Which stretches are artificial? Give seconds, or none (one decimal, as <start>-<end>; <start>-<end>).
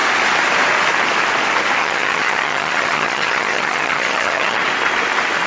1.8-4.6